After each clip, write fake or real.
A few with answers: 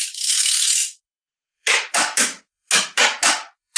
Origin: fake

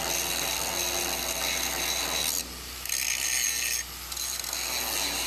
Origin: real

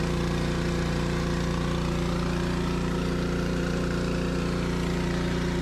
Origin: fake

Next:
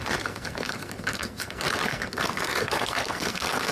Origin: fake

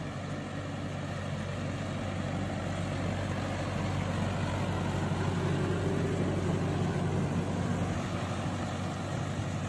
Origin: real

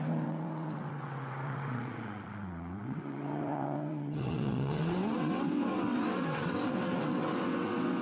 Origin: fake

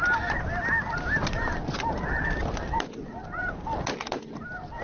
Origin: real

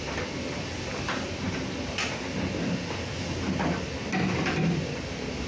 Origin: real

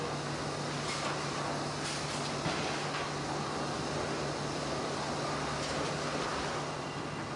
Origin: real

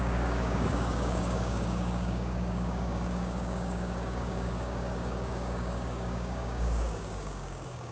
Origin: fake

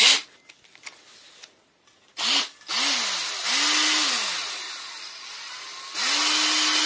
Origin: real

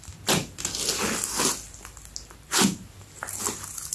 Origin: real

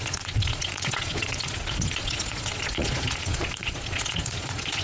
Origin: fake